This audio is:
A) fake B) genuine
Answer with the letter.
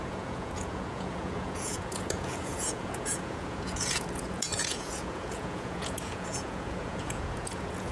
A